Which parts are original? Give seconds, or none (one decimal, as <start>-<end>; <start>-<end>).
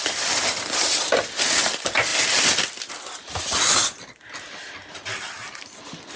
0.0-6.2